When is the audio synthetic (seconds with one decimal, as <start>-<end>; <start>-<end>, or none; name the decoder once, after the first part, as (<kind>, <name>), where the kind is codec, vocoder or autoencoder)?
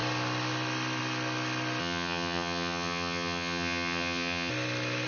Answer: 1.8-4.5 (vocoder, HiFi-GAN)